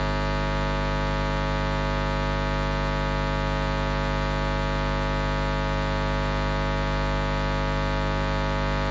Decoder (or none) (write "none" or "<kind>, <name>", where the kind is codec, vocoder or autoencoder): none